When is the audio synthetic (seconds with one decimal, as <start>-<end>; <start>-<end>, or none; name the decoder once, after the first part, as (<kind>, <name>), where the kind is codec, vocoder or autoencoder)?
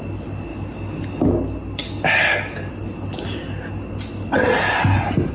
0.5-1.3 (codec, DAC); 1.8-2.7